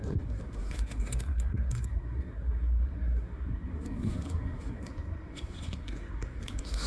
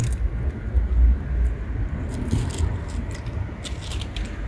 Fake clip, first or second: first